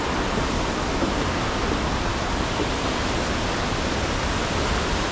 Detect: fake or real real